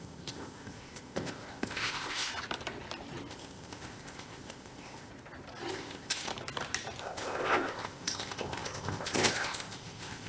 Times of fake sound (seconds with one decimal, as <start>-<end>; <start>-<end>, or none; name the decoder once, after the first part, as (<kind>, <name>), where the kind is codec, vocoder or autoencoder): 0.0-2.3 (codec, ZipCodec); 3.3-5.1; 5.7-6.3; 7.0-10.3

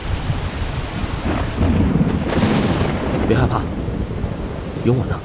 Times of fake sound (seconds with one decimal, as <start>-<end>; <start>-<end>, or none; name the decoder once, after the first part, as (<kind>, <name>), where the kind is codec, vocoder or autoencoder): 0.0-3.1 (vocoder, BigVGAN v2)

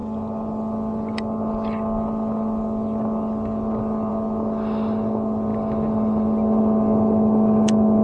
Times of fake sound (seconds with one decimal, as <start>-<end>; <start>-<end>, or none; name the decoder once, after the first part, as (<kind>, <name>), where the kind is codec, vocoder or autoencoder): none